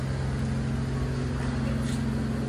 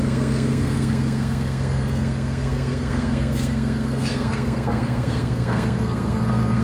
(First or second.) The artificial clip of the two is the second